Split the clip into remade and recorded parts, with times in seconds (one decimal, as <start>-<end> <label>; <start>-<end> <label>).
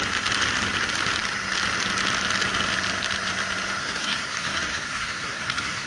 0.0-3.8 recorded; 3.8-5.9 remade